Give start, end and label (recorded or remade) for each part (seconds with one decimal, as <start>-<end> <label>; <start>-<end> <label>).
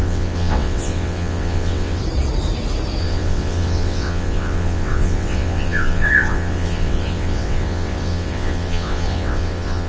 0.0-2.0 remade; 2.0-3.0 recorded; 3.0-9.9 remade